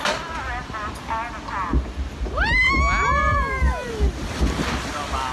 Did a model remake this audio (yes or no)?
no